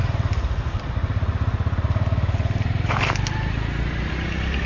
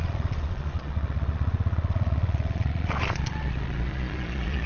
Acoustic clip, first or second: first